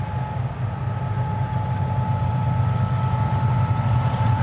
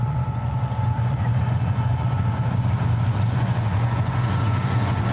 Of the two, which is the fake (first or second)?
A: second